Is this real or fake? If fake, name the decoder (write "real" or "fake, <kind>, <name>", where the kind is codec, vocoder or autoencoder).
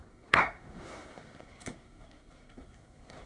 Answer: fake, codec, SNAC